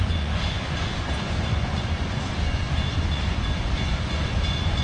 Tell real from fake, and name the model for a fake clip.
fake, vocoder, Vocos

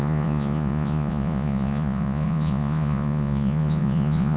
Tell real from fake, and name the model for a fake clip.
fake, vocoder, Vocos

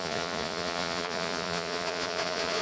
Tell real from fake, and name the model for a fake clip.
fake, vocoder, Vocos